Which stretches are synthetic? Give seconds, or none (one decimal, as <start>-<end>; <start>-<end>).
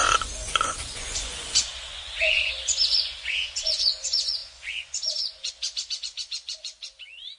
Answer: 0.0-7.4